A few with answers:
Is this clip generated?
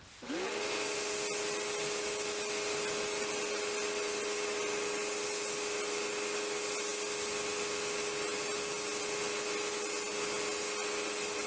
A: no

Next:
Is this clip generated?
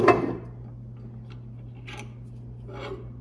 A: no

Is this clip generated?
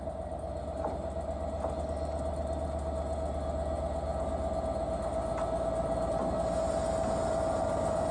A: no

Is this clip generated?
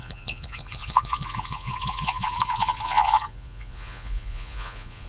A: yes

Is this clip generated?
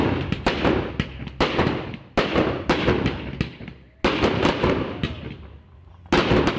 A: no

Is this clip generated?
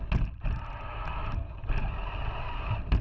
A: no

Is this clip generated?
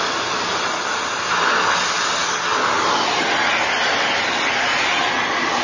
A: no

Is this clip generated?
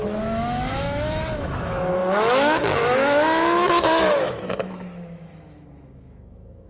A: yes